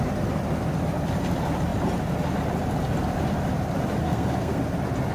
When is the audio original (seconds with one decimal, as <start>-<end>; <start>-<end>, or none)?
0.0-4.0; 4.6-5.1